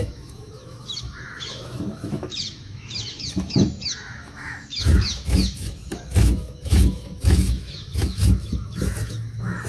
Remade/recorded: remade